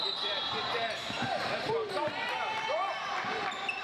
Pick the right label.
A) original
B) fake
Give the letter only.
B